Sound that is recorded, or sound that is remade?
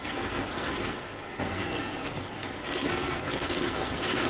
remade